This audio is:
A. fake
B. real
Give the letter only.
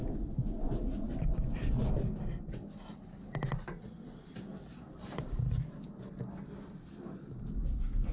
B